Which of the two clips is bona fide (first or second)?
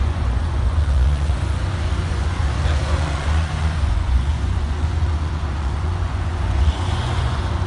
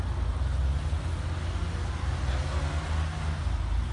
second